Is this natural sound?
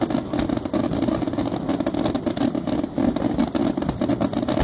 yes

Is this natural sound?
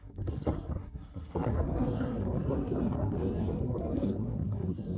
no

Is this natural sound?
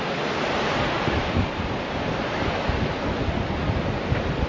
yes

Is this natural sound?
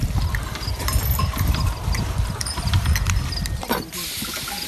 yes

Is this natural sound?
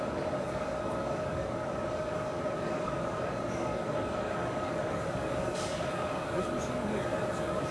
no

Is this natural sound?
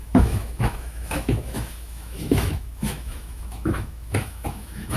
no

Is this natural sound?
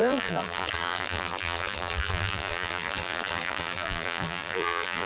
no